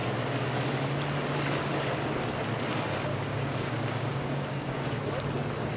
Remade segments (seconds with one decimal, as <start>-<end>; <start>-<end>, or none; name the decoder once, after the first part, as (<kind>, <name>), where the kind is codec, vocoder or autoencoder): 3.1-5.0 (codec, DAC)